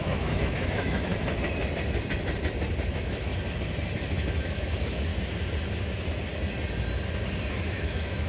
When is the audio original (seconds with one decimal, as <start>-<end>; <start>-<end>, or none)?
1.1-2.9; 3.3-4.1; 5.1-7.5